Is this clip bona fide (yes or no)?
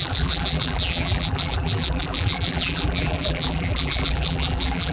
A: no